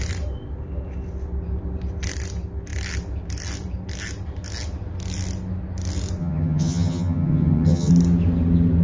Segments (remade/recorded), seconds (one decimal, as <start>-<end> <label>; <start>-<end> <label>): 0.0-6.2 recorded; 6.2-7.9 remade; 7.9-8.8 recorded